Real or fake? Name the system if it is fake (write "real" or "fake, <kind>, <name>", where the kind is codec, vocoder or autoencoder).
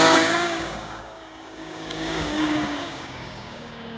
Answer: fake, codec, DAC